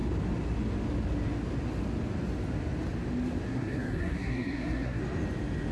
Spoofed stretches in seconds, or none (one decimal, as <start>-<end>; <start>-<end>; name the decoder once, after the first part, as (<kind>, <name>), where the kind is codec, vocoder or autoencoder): 3.5-5.0 (codec, SNAC)